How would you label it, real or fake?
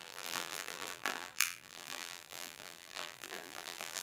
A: fake